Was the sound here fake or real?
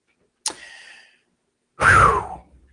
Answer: real